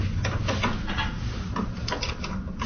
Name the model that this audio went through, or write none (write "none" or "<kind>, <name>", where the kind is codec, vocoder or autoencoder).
none